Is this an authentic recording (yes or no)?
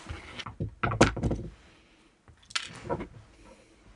yes